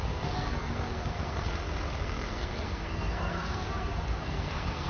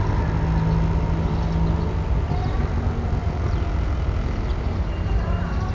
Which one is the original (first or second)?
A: second